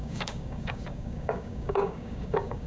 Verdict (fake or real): fake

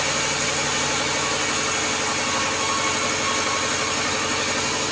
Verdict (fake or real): real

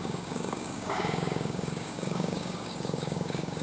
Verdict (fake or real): fake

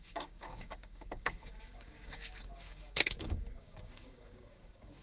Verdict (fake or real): fake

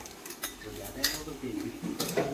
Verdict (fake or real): fake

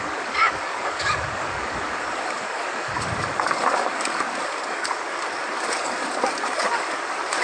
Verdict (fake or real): fake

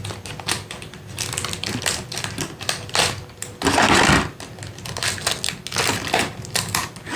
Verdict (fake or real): real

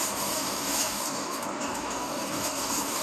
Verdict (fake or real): fake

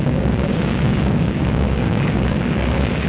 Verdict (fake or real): fake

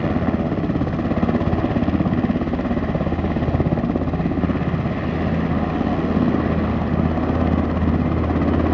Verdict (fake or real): real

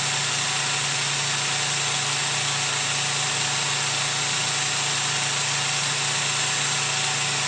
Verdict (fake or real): real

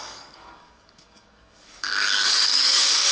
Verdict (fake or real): fake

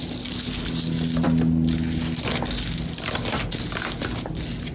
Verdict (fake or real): real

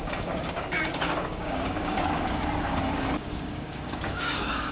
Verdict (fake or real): fake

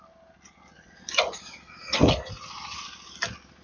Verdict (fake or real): real